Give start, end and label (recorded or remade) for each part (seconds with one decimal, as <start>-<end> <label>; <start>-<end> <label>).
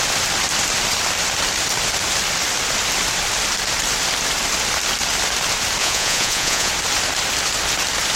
0.0-5.8 recorded; 5.8-6.7 remade; 6.7-8.2 recorded